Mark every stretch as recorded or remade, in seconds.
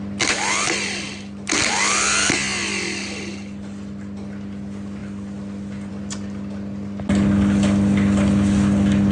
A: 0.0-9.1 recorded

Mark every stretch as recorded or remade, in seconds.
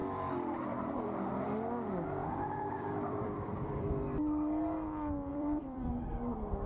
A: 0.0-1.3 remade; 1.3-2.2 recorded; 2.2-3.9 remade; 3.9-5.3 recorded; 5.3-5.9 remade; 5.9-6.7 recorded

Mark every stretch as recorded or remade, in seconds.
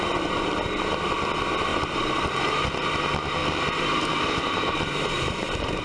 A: 0.0-1.7 recorded; 1.7-2.9 remade; 2.9-3.4 recorded; 3.4-5.8 remade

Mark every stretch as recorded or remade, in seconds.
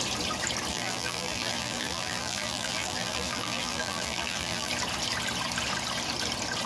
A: 0.0-0.7 recorded; 0.7-4.7 remade; 4.7-6.7 recorded